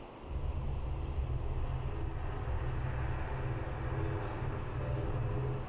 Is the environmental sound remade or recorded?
recorded